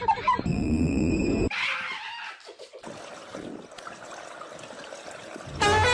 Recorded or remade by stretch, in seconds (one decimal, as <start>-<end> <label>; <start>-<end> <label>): 0.0-0.5 recorded; 0.5-1.1 remade; 1.1-5.9 recorded